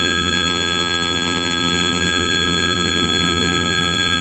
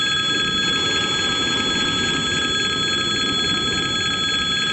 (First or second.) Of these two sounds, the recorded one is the second